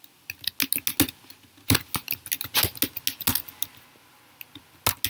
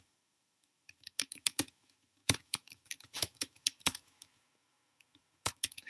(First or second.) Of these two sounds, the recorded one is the first